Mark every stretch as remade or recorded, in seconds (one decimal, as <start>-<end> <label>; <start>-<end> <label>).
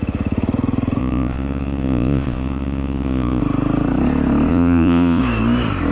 0.0-1.0 recorded; 1.0-3.4 remade; 3.4-4.5 recorded; 4.5-5.2 remade; 5.2-5.9 recorded